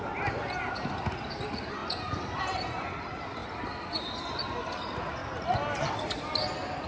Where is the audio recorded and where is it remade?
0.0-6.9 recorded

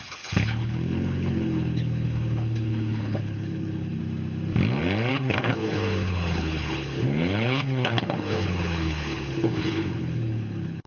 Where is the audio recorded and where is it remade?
0.0-4.0 remade; 4.0-5.1 recorded; 5.1-10.9 remade

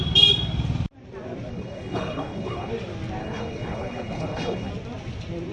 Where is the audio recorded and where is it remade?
0.0-1.5 recorded; 1.5-2.7 remade; 2.7-3.2 recorded; 3.2-4.7 remade; 4.7-5.5 recorded